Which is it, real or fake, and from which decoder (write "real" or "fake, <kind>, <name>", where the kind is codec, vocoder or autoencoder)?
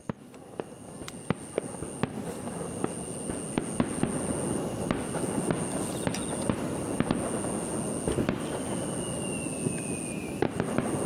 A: real